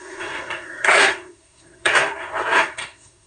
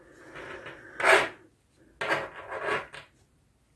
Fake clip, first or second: first